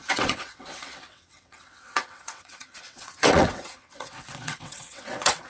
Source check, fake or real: fake